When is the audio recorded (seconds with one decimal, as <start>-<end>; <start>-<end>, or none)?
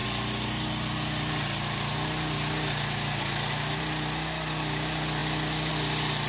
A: 0.0-6.3